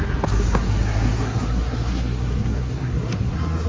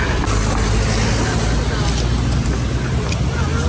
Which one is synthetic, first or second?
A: first